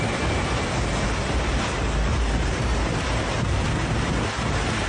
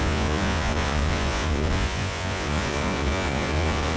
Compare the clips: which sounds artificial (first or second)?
second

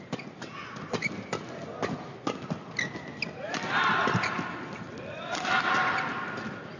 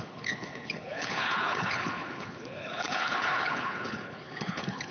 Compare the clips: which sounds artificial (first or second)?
second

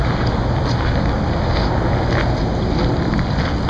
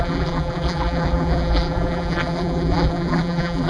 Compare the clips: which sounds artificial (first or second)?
second